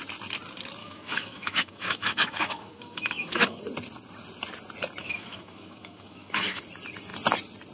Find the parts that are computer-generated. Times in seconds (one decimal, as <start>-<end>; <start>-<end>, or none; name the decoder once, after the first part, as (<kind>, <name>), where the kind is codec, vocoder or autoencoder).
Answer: 0.8-3.6 (autoencoder, DAC-VAE); 5.0-6.6